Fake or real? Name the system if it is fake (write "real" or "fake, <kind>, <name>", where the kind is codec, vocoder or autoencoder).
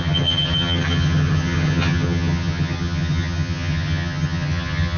fake, vocoder, HiFi-GAN